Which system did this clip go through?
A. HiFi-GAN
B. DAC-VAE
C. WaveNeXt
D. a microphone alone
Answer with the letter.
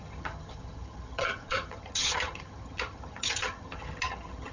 A